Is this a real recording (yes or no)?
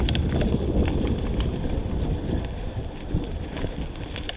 no